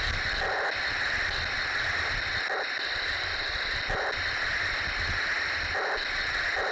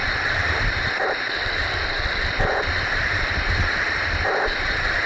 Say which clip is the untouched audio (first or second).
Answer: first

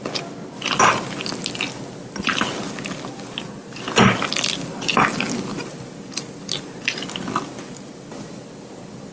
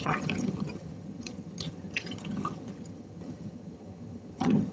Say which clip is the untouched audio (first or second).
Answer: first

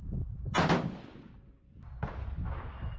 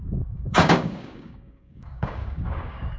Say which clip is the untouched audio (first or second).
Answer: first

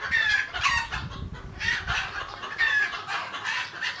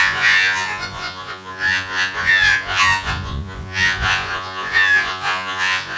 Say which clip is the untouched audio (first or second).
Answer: first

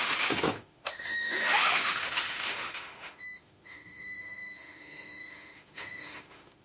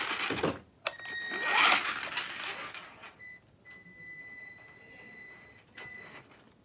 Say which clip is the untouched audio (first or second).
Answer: second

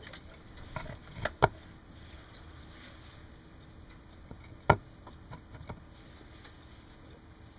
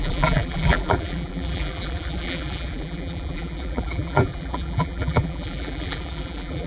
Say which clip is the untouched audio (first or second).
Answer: first